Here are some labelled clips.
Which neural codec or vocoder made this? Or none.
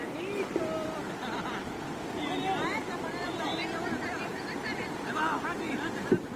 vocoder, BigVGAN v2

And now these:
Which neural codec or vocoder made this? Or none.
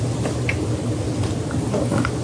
none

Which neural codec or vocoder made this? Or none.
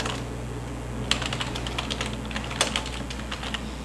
none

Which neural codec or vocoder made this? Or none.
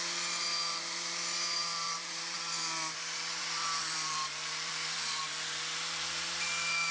vocoder, BigVGAN v2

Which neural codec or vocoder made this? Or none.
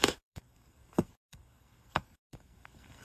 codec, SNAC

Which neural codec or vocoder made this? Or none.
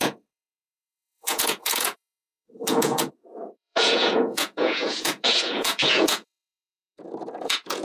vocoder, Vocos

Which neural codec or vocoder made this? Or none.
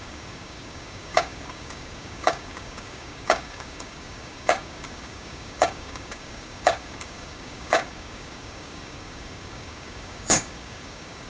codec, DAC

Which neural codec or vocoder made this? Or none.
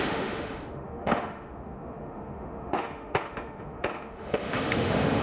autoencoder, DAC-VAE